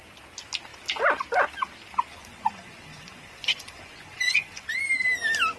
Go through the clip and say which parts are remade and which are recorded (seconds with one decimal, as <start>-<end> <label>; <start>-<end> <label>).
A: 0.0-2.1 recorded; 2.1-4.6 remade; 4.6-5.6 recorded